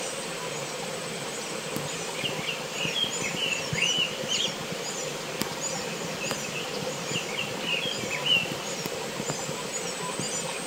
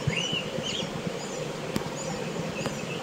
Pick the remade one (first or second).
second